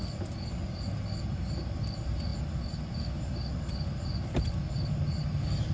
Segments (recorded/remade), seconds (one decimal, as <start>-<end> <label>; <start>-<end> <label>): 0.0-5.7 recorded